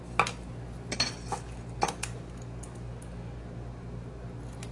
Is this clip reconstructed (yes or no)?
no